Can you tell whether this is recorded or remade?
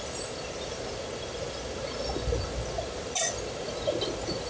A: recorded